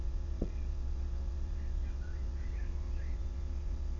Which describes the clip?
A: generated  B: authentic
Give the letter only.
A